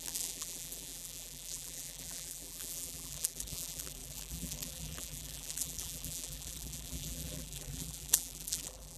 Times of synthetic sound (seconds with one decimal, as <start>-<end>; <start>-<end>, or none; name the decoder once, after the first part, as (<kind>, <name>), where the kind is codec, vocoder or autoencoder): 0.0-9.0 (vocoder, BigVGAN v2)